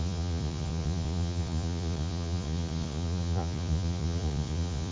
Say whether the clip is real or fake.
fake